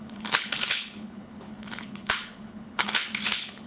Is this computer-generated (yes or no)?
yes